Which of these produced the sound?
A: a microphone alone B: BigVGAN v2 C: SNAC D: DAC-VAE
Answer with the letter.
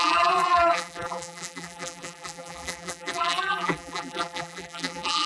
B